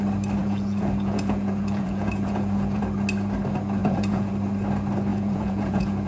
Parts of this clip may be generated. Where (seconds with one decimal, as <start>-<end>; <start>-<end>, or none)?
0.4-2.8; 3.8-4.3; 5.1-6.1